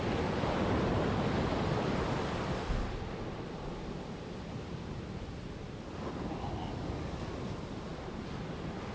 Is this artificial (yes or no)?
no